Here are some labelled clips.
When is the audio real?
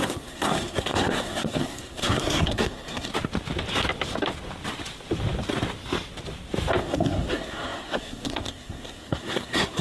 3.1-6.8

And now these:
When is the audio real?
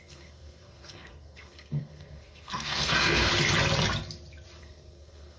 3.3-4.6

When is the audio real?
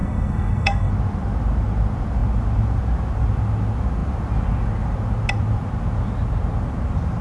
0.9-7.2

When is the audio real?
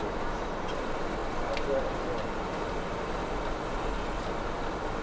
0.0-5.0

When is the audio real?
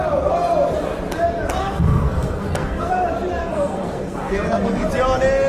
0.0-1.6; 2.9-3.4; 4.9-5.5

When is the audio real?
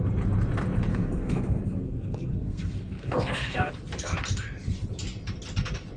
0.0-0.9; 3.7-6.0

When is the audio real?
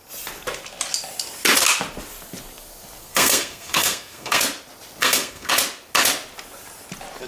0.0-3.0; 4.4-5.0; 5.5-7.3